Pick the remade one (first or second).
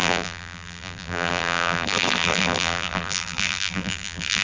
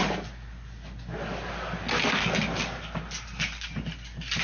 first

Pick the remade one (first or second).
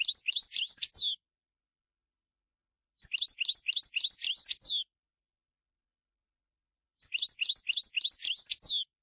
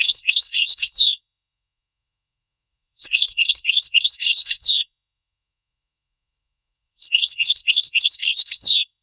second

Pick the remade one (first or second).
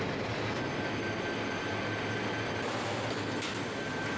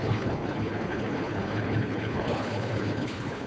second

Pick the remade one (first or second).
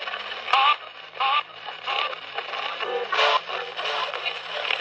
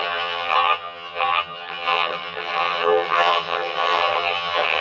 second